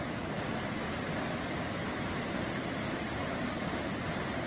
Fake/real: real